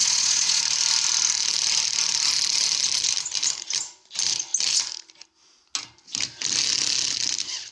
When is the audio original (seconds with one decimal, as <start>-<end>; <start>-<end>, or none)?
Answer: 0.6-7.7